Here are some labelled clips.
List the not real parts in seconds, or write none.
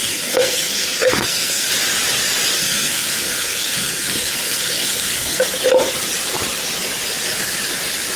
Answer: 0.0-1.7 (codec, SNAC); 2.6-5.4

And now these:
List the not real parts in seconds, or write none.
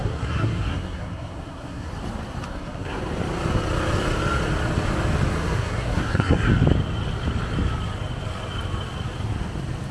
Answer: 0.0-1.9 (codec, SNAC); 2.5-3.0; 5.3-6.5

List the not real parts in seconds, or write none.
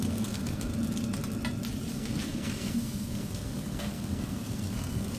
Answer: 0.0-0.7 (codec, SNAC); 1.9-5.2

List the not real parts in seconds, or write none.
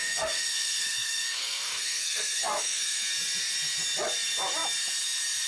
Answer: 0.0-3.0 (codec, SNAC)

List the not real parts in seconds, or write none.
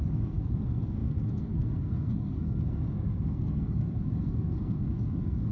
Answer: 0.0-5.5 (codec, SNAC)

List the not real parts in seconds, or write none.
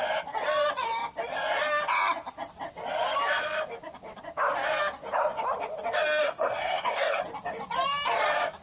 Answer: 6.2-7.2 (codec, SNAC)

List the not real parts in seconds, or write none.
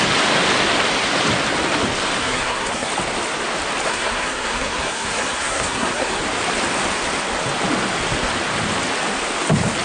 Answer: 2.2-2.9 (codec, SNAC); 3.9-6.2